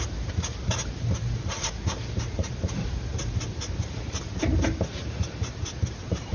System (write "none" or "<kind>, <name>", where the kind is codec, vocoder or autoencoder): none